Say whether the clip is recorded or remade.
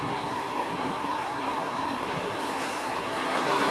remade